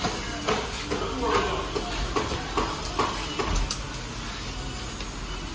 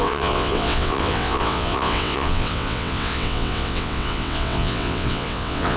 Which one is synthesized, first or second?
second